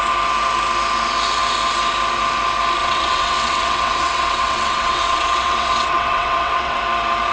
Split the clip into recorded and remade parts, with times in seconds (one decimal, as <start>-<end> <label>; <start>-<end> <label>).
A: 0.0-2.8 recorded; 2.8-6.8 remade; 6.8-7.3 recorded